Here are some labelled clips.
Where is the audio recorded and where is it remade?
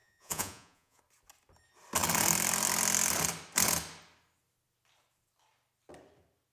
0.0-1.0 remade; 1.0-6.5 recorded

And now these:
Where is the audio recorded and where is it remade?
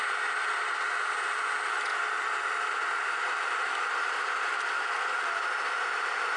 0.0-6.4 recorded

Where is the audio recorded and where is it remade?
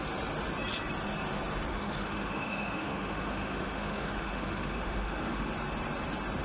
0.0-1.7 recorded; 1.7-5.5 remade; 5.5-6.4 recorded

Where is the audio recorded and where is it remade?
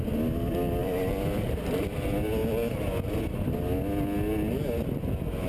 0.0-0.8 recorded; 0.8-1.6 remade; 1.6-5.5 recorded